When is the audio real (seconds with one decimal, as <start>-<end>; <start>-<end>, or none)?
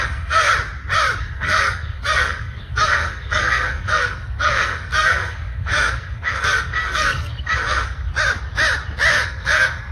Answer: 0.5-1.2; 8.1-9.1